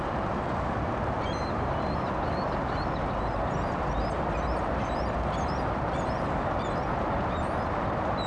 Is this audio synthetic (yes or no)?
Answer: yes